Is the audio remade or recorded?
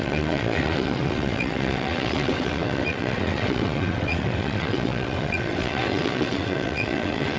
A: remade